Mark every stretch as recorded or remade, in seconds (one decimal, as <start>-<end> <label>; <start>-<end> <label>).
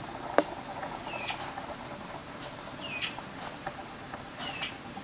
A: 0.0-0.7 recorded; 0.7-1.3 remade; 1.3-5.0 recorded